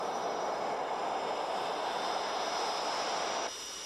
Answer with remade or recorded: recorded